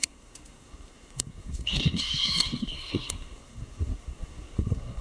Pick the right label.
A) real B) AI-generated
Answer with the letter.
B